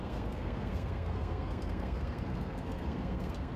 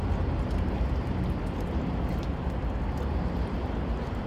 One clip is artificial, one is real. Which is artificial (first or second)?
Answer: first